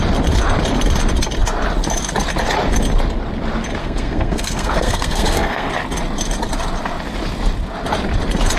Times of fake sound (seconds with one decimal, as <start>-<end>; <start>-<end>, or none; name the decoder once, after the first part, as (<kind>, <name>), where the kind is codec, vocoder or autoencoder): 3.8-5.7 (codec, SNAC)

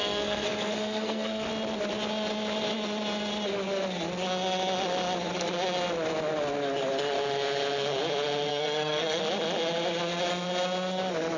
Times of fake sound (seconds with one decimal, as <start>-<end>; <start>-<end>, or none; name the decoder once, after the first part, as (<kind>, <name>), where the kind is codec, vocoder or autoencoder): 0.0-1.5 (codec, SNAC); 8.5-9.2

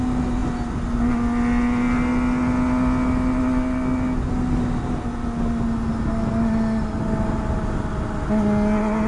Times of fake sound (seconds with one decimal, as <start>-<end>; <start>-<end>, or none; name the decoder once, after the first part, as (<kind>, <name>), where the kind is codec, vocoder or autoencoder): none

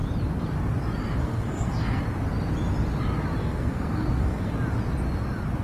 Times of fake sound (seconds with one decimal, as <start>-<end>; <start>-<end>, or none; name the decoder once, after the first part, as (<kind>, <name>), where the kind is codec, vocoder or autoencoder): 1.2-2.0 (codec, SNAC); 3.4-4.5

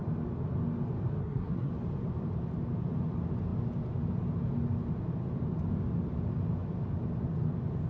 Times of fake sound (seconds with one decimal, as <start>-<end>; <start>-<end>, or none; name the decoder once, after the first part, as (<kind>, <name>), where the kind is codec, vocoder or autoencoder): 1.2-1.7 (codec, SNAC)